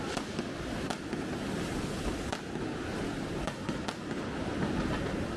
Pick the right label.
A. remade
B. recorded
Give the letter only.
B